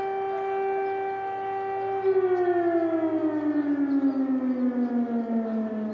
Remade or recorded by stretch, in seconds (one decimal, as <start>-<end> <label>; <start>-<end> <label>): 0.0-5.9 recorded

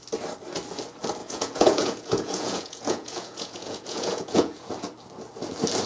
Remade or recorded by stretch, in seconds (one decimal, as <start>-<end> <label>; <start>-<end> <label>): 0.0-1.2 recorded; 1.2-4.7 remade; 4.7-5.9 recorded

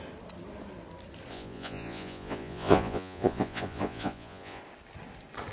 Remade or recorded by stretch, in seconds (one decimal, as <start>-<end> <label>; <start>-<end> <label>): 0.0-1.3 recorded; 1.3-4.6 remade; 4.6-5.5 recorded

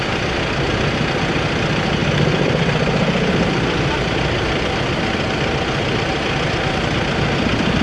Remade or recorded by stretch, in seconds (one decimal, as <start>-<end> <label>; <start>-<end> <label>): 0.0-7.8 recorded

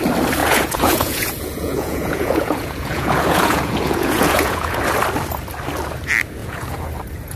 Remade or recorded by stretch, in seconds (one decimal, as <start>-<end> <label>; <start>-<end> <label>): 0.0-0.4 recorded; 0.4-4.8 remade; 4.8-6.4 recorded; 6.4-6.9 remade; 6.9-7.4 recorded

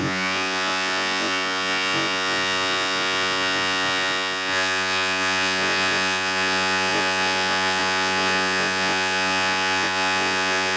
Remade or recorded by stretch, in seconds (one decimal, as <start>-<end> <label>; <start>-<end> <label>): 0.0-10.8 remade

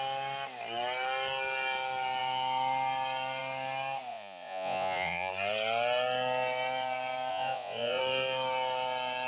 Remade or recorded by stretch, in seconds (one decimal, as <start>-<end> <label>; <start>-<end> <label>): 0.0-4.1 recorded; 4.1-5.3 remade; 5.3-7.3 recorded; 7.3-8.0 remade; 8.0-9.3 recorded